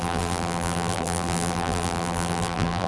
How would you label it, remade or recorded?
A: remade